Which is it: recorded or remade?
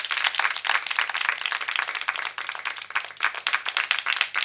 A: recorded